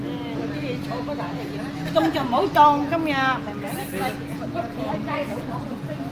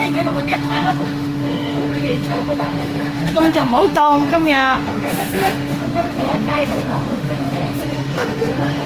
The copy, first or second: second